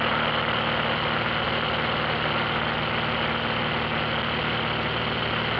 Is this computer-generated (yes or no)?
no